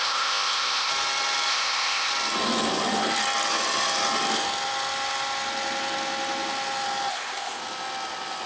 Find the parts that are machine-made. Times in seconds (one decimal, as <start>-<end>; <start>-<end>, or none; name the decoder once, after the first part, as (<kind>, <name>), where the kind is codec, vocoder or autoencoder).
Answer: 0.0-0.9 (codec, ZipCodec); 1.5-2.1; 7.1-7.6

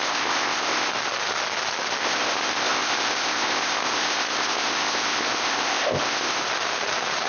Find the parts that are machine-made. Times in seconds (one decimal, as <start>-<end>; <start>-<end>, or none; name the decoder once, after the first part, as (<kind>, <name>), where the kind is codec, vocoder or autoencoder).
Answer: 0.0-0.9 (codec, ZipCodec); 2.0-6.4

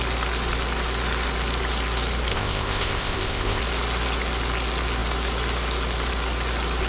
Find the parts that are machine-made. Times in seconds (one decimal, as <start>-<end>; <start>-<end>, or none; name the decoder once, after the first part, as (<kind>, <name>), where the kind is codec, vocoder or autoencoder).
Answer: 2.3-3.6 (codec, ZipCodec)

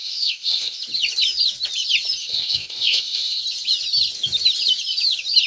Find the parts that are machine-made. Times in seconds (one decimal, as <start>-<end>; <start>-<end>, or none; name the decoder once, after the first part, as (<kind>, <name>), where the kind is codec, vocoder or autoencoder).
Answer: 0.0-0.8 (codec, ZipCodec); 2.2-3.4

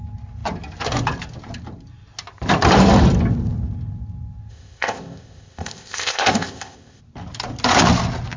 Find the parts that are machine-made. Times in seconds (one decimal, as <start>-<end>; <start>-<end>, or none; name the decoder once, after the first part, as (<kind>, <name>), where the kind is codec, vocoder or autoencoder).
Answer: 4.5-7.0 (codec, ZipCodec)